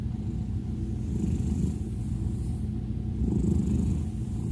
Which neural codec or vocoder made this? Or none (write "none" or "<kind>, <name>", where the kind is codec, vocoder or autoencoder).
none